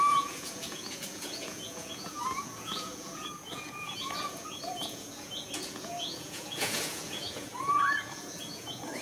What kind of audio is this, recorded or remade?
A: remade